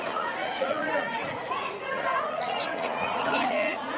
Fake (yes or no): yes